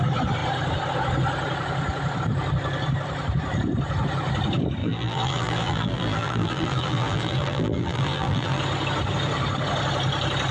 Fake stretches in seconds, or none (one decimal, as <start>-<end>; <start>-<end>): 4.8-8.6